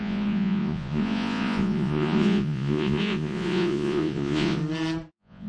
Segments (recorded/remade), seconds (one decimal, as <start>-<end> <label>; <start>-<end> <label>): 0.0-4.6 remade; 4.6-5.1 recorded; 5.1-5.5 remade